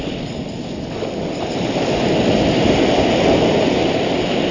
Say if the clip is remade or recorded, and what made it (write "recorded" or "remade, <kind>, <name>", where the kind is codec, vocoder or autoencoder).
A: recorded